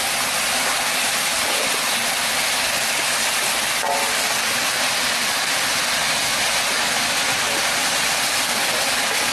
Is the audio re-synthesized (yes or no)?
no